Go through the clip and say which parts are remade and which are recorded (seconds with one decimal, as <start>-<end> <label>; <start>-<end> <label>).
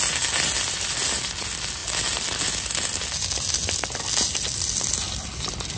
0.0-5.8 recorded